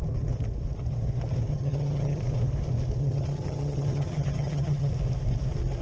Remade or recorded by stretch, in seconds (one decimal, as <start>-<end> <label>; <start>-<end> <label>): 0.0-1.5 recorded; 1.5-2.2 remade; 2.2-3.0 recorded; 3.0-4.9 remade; 4.9-5.8 recorded